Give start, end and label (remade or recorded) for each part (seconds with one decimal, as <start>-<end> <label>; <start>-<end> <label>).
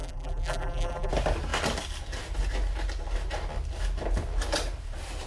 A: 0.0-1.1 remade; 1.1-5.3 recorded